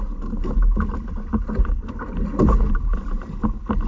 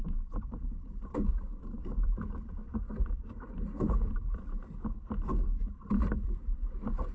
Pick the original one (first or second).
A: first